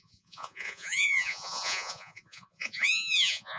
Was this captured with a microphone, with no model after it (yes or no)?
no